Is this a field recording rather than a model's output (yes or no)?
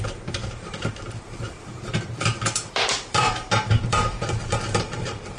no